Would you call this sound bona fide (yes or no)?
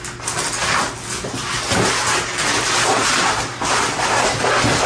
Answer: yes